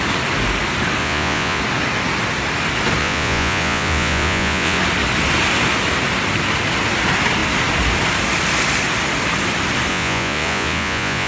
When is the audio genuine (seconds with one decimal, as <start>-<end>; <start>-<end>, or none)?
0.0-1.0; 1.6-3.0; 4.8-9.9